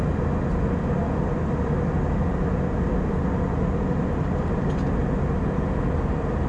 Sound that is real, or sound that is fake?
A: real